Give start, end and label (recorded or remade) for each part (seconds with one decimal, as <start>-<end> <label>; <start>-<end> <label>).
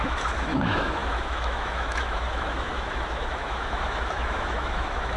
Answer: 0.0-5.2 remade